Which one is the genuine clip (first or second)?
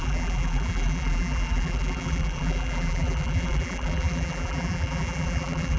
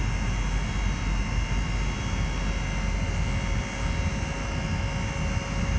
second